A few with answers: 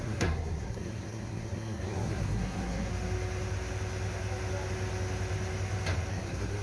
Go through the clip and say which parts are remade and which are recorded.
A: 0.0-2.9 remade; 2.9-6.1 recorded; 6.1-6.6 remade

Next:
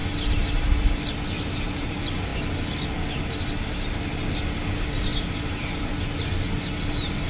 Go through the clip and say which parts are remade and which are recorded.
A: 0.0-7.3 recorded

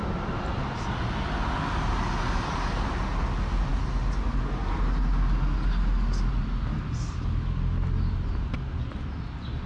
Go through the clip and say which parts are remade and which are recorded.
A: 0.0-9.7 recorded

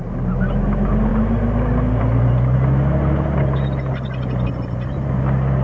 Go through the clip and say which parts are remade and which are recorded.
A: 0.0-5.6 recorded

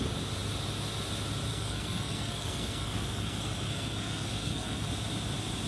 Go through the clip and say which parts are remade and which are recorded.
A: 0.0-1.5 recorded; 1.5-4.9 remade; 4.9-5.7 recorded